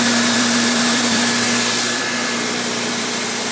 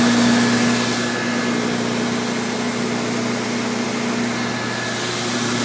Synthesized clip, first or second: first